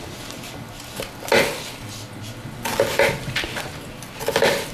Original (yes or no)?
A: yes